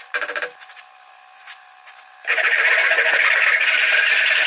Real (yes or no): no